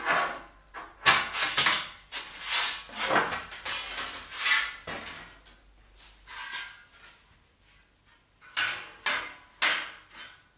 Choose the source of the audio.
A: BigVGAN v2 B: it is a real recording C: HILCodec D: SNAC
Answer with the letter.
B